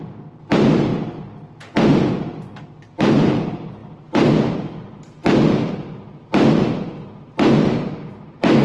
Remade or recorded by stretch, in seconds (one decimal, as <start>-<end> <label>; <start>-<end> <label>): 0.0-0.9 remade; 0.9-1.9 recorded; 1.9-8.6 remade